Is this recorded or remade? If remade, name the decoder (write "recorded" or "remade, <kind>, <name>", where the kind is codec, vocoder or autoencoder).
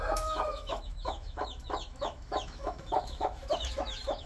remade, autoencoder, DAC-VAE